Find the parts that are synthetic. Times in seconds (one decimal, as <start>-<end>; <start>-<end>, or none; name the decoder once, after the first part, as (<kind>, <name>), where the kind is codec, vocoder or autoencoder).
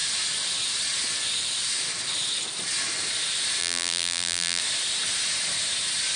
3.6-4.6 (vocoder, BigVGAN v2)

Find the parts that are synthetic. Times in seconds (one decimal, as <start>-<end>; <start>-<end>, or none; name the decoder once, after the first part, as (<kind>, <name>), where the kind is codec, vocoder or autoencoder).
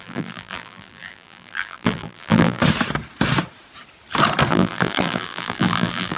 0.0-2.6 (vocoder, BigVGAN v2); 4.5-6.2